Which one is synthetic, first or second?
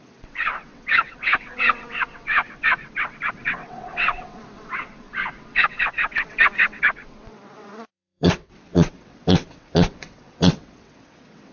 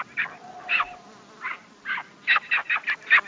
first